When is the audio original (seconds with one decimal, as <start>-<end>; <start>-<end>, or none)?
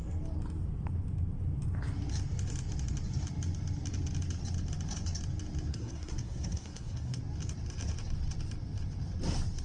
0.0-5.7; 7.2-9.6